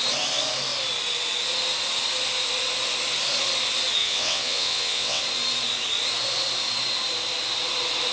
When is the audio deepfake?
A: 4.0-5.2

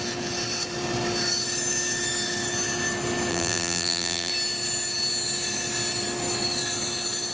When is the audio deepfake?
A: 3.3-4.3

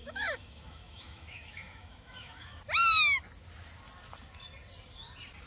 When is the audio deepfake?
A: 0.0-2.6

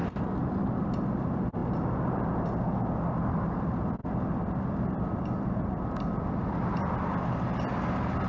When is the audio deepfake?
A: none

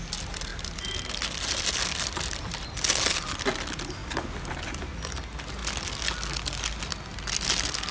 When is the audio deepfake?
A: none